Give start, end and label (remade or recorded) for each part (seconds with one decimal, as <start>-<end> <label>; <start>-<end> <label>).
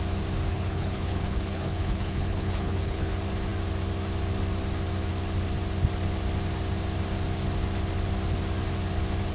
0.0-0.5 recorded; 0.5-3.1 remade; 3.1-9.3 recorded